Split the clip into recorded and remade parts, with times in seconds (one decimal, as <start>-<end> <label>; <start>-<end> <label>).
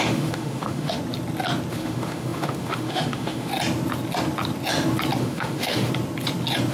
0.0-1.0 remade; 1.0-1.7 recorded; 1.7-3.5 remade; 3.5-5.2 recorded; 5.2-5.9 remade; 5.9-6.7 recorded